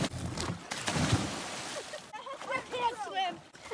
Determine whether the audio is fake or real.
real